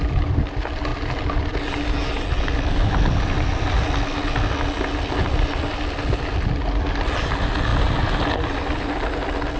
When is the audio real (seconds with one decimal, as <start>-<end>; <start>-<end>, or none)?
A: 0.0-9.6